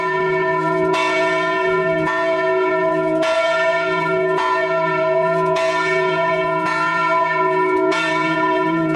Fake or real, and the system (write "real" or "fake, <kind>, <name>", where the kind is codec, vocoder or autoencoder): fake, vocoder, Vocos